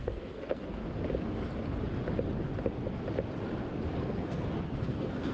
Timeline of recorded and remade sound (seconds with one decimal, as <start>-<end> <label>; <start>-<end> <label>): 0.0-0.8 remade; 0.8-4.0 recorded; 4.0-5.3 remade